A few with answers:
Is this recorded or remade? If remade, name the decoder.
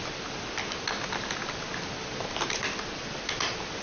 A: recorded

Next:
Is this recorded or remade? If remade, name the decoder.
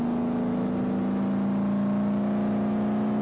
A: recorded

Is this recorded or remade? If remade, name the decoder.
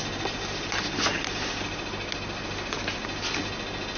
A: recorded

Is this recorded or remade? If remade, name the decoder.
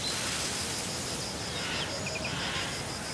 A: recorded